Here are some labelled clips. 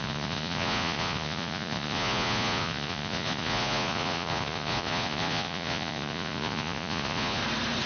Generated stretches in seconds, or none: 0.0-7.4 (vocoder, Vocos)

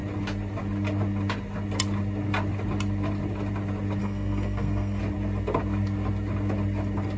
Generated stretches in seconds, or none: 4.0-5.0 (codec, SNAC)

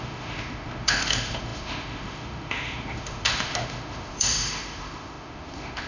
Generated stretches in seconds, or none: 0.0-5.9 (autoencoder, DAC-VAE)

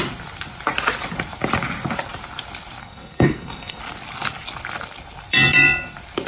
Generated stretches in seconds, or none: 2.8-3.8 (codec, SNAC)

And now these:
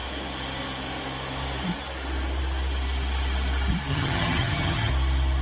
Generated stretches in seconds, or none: 3.9-4.9 (vocoder, HiFi-GAN)

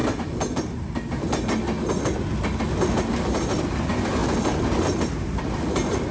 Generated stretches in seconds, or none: none

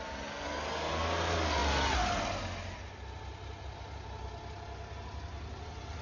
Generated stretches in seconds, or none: none

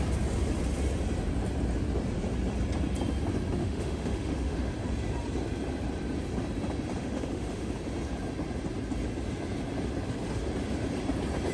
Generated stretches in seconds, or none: 3.6-4.7 (autoencoder, DAC-VAE); 7.0-7.7